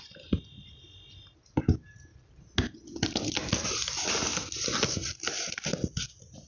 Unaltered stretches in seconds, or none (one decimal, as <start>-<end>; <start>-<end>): 0.0-6.5